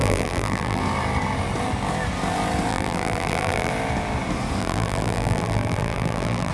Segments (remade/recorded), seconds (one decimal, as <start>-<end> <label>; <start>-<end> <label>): 0.0-0.8 remade; 0.8-2.7 recorded; 2.7-3.7 remade; 3.7-4.6 recorded; 4.6-6.5 remade